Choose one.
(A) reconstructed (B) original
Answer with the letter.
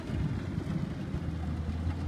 B